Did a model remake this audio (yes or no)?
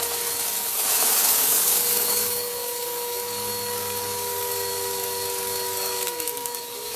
yes